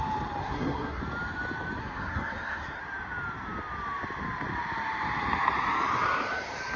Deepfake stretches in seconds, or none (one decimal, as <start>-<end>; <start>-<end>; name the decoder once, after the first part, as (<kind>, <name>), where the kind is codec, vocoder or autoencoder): 0.4-1.0 (codec, SNAC); 1.8-2.8